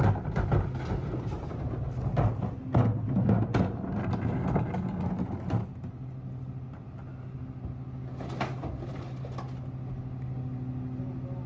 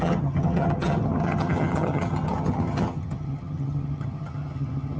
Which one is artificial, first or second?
second